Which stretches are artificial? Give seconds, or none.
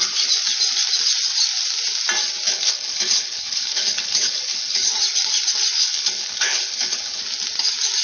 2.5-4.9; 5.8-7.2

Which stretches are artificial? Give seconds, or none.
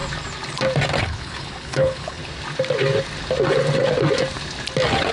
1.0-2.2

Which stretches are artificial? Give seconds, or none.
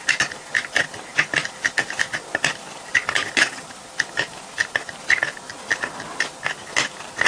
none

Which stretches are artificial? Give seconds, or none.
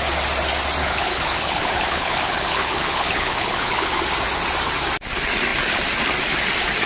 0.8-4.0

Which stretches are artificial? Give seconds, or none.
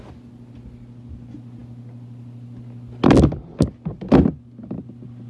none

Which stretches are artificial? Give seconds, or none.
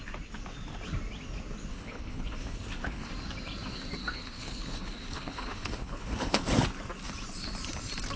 1.7-3.1; 4.0-6.4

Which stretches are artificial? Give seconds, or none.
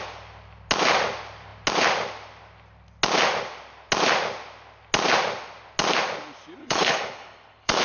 6.6-7.8